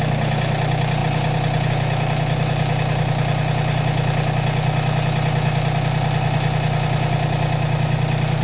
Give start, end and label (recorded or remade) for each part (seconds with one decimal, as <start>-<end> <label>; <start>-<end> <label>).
0.0-8.4 recorded